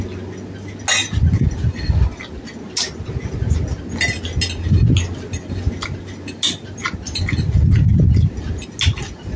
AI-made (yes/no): no